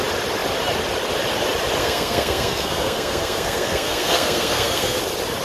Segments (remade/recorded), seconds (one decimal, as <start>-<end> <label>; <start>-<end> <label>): 0.0-1.8 recorded; 1.8-5.0 remade; 5.0-5.4 recorded